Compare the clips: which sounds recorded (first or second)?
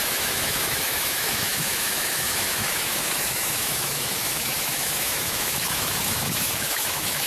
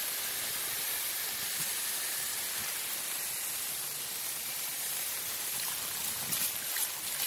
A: second